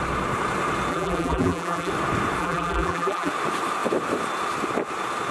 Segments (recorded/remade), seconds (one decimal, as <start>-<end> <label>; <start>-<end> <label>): 0.0-0.9 recorded; 0.9-1.9 remade; 1.9-2.4 recorded; 2.4-3.3 remade; 3.3-5.3 recorded